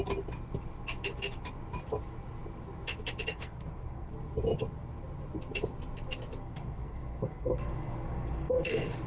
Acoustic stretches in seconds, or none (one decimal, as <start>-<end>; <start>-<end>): 0.0-3.3; 4.1-6.4